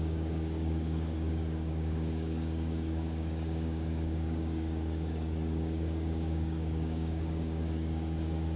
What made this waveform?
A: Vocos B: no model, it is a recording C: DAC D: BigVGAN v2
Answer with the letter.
C